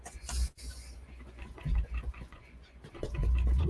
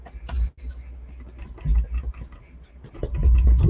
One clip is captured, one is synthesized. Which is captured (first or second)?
second